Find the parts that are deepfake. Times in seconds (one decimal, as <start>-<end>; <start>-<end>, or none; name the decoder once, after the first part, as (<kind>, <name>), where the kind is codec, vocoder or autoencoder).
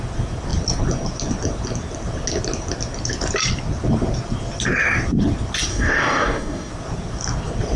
5.7-6.7 (codec, DAC)